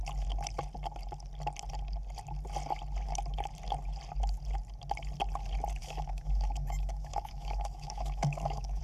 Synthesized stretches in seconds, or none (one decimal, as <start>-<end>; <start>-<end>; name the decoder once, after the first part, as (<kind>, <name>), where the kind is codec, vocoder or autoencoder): 5.8-8.8 (autoencoder, DAC-VAE)